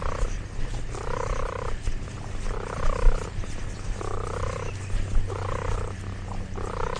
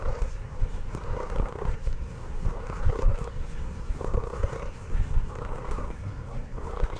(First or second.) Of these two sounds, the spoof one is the second